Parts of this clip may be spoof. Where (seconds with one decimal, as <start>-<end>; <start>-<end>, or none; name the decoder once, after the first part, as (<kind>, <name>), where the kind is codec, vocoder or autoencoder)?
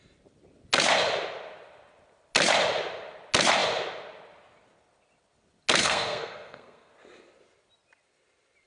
5.8-6.9 (codec, SNAC)